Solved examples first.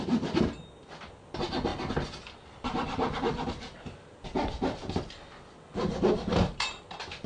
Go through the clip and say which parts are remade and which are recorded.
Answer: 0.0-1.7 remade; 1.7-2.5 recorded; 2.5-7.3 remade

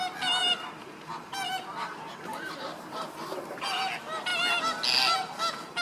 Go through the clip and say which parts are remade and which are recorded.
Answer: 0.0-0.4 recorded; 0.4-3.9 remade; 3.9-5.8 recorded

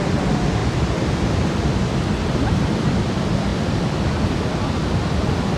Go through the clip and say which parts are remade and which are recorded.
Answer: 0.0-3.5 recorded; 3.5-4.4 remade; 4.4-5.6 recorded

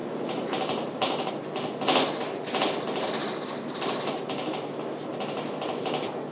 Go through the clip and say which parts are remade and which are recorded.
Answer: 0.0-1.3 remade; 1.3-3.2 recorded; 3.2-4.1 remade; 4.1-6.3 recorded

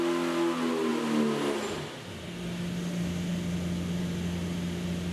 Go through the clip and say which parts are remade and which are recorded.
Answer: 0.0-5.1 recorded

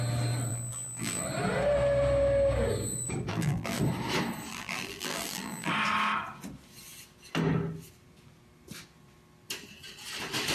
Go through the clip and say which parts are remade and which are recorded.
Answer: 0.0-0.5 recorded; 0.5-1.2 remade; 1.2-3.3 recorded; 3.3-3.8 remade; 3.8-4.5 recorded; 4.5-5.7 remade; 5.7-10.5 recorded

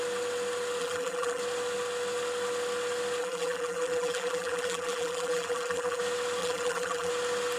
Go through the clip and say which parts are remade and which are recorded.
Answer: 0.0-0.8 recorded; 0.8-1.4 remade; 1.4-3.2 recorded; 3.2-6.0 remade; 6.0-6.4 recorded; 6.4-7.1 remade; 7.1-7.6 recorded